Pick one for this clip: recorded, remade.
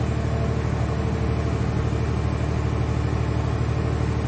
recorded